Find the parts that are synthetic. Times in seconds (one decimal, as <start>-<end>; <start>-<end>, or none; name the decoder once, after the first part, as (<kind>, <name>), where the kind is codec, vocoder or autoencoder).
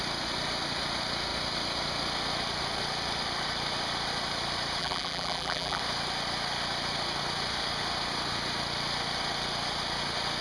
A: 4.8-5.8 (vocoder, BigVGAN v2)